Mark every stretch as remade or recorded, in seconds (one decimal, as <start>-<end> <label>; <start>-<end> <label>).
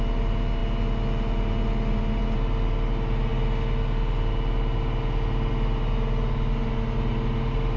0.0-7.8 recorded